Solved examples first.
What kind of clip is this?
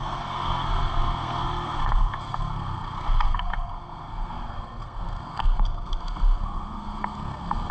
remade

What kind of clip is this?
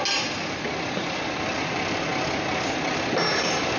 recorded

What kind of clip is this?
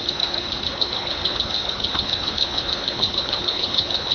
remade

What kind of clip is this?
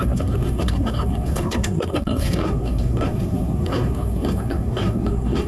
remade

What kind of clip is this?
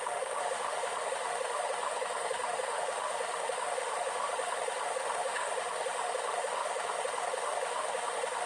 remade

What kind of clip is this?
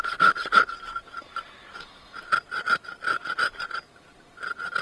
recorded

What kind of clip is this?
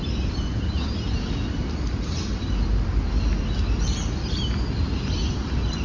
recorded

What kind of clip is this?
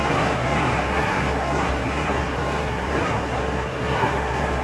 remade